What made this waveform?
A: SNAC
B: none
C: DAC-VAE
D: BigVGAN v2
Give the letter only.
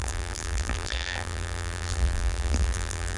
D